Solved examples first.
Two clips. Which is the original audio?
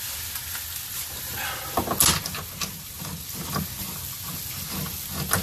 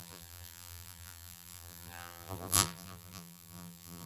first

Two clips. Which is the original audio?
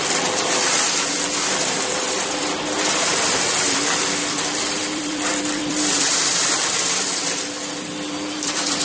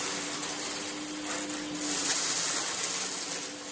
second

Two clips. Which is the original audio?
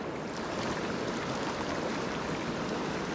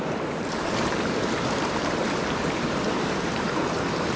first